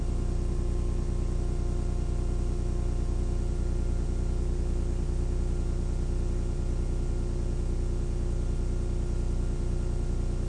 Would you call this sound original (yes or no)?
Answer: yes